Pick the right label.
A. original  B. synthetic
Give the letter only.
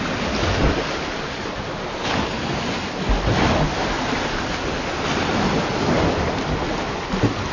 A